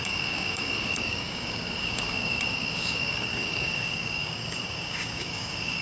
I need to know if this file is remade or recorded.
remade